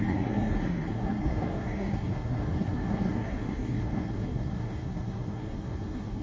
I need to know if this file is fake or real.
fake